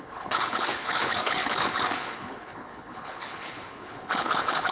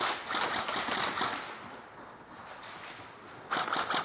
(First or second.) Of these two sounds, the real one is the second